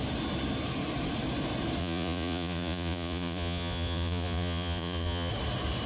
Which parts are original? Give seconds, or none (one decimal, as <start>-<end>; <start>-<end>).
0.0-1.8; 5.3-5.9